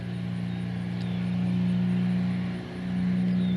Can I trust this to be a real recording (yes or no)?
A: yes